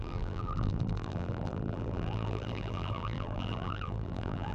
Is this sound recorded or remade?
remade